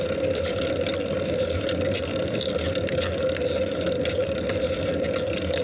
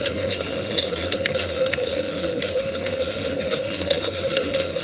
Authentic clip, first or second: first